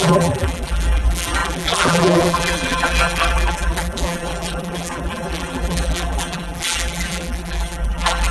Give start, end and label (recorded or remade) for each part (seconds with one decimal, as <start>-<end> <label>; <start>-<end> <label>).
0.0-8.3 remade